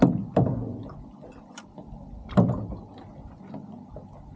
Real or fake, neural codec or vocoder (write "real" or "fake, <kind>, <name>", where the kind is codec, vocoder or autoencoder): real